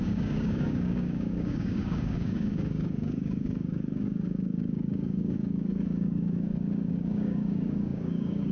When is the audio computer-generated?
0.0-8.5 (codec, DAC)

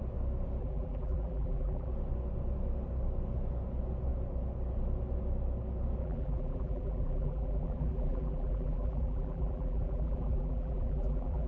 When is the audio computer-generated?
0.6-1.9 (vocoder, BigVGAN v2); 6.0-11.5

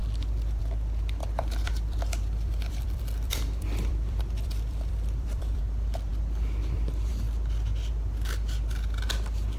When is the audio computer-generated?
1.2-5.6 (vocoder, BigVGAN v2)

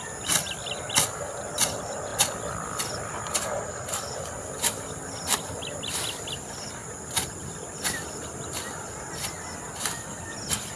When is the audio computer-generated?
none

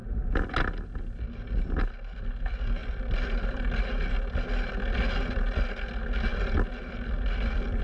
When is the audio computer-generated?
2.8-3.7 (vocoder, BigVGAN v2)

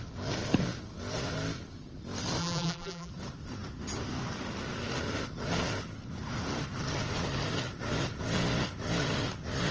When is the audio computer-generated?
2.4-3.1 (vocoder, BigVGAN v2)